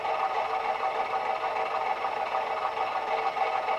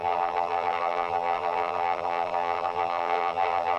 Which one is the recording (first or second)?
first